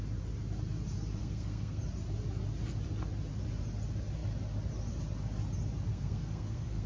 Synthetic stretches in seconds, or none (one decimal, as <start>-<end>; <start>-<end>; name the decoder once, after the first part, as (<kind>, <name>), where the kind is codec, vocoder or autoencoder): 1.2-1.8 (codec, SNAC); 5.9-6.9